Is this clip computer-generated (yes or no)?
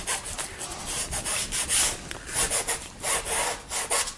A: no